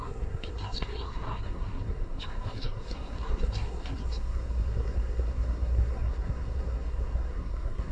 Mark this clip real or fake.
fake